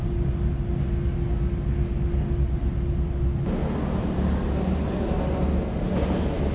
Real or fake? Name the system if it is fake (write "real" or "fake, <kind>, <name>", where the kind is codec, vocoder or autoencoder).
real